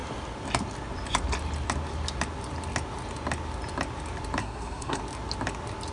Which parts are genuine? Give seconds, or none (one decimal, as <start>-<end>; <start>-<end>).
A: 0.0-4.4; 5.0-5.9

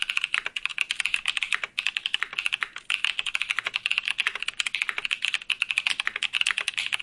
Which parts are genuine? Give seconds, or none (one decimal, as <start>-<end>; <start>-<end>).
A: 0.0-7.0